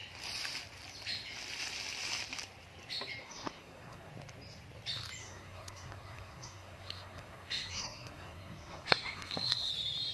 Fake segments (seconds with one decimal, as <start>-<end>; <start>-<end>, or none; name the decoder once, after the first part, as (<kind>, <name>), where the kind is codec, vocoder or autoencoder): 3.2-4.1 (codec, SNAC); 5.2-9.7